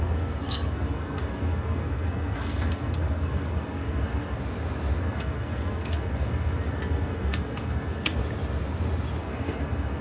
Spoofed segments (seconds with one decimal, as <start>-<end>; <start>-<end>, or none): 0.0-4.4; 5.0-8.2; 9.2-10.0